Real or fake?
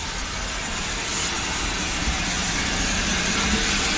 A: real